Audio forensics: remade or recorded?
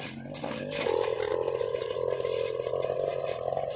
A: recorded